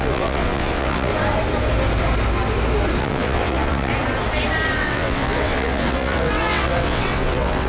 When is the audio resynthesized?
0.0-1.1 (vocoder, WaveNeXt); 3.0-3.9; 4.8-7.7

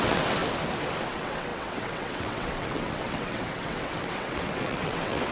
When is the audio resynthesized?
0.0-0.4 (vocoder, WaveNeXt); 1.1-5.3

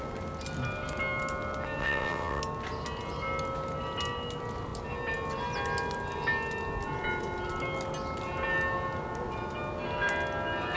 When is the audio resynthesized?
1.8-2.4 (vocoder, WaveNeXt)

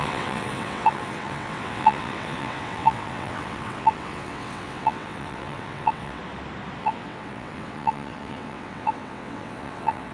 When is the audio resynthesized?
0.0-6.2 (vocoder, WaveNeXt); 6.8-10.1

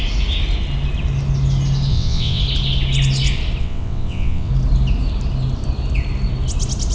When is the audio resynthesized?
1.9-2.4 (vocoder, WaveNeXt); 3.6-4.5

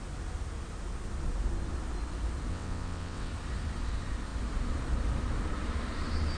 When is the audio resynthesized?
2.5-3.3 (vocoder, WaveNeXt)

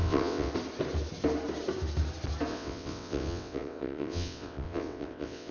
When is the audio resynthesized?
0.0-0.5 (vocoder, WaveNeXt); 2.5-5.5